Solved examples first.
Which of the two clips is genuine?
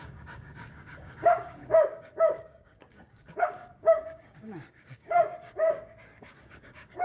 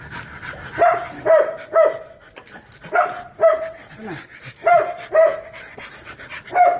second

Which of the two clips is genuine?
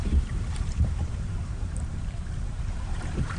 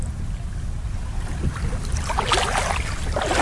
second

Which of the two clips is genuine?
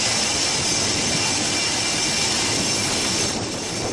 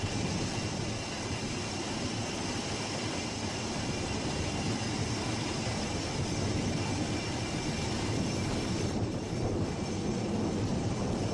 first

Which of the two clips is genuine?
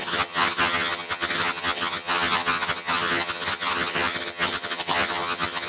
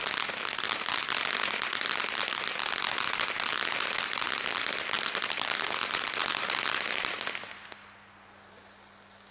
second